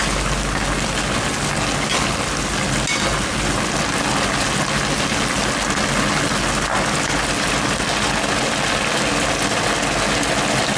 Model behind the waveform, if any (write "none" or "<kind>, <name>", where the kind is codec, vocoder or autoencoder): none